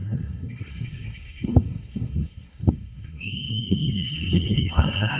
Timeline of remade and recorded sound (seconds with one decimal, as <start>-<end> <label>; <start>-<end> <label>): 0.0-5.2 remade